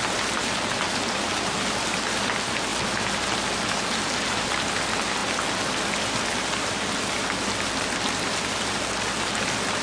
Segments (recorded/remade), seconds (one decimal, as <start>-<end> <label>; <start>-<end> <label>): 0.0-9.8 recorded